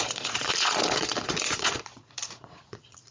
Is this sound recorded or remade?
remade